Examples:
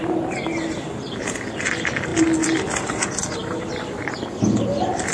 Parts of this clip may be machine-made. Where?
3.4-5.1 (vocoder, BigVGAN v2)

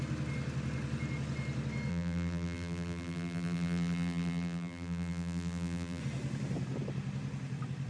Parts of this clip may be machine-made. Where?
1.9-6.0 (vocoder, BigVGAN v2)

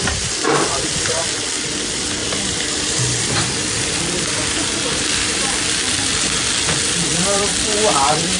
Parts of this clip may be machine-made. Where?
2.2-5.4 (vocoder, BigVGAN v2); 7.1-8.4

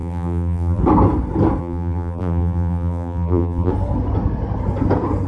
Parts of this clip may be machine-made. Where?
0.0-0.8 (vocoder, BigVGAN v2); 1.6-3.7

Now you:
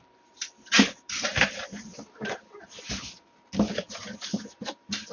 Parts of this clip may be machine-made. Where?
0.0-1.9 (vocoder, BigVGAN v2)

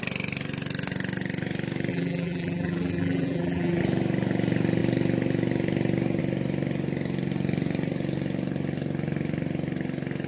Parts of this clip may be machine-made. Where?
1.9-3.8 (vocoder, BigVGAN v2)

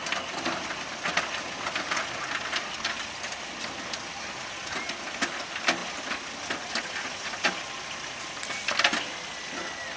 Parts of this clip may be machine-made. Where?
none